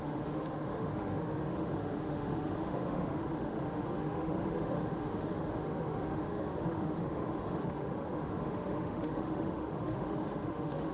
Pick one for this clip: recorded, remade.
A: remade